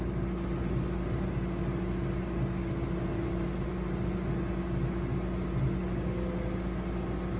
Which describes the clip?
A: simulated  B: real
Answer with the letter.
B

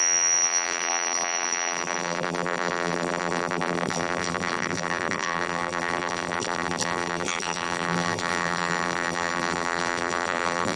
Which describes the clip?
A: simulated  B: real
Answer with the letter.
A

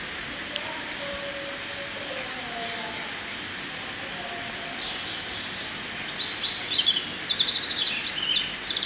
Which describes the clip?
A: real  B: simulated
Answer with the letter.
A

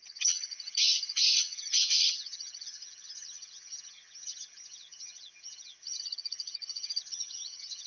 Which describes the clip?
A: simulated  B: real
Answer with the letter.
A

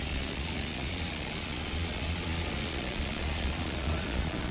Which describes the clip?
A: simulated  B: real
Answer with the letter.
A